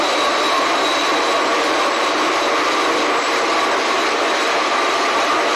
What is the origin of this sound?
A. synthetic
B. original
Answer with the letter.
A